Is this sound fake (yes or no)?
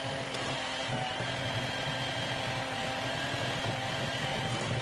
no